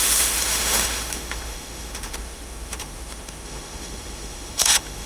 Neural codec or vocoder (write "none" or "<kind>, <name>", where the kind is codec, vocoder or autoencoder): autoencoder, DAC-VAE